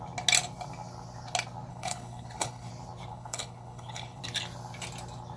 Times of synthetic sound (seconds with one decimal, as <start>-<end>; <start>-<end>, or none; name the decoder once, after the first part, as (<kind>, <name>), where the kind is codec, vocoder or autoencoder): 1.7-2.7 (codec, HILCodec); 3.1-4.2